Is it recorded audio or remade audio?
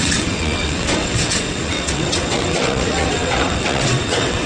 remade